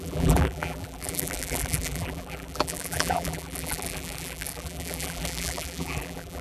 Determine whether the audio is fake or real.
fake